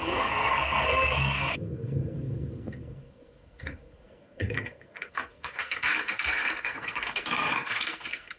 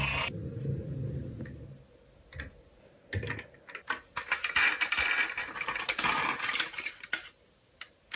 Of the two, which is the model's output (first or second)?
first